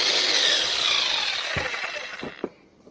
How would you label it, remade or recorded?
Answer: recorded